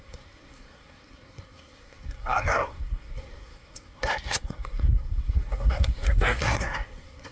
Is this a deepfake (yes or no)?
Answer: yes